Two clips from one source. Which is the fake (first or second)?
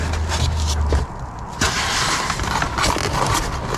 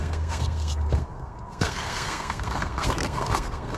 second